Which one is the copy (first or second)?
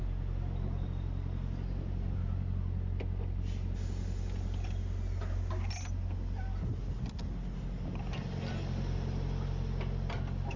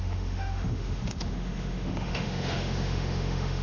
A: second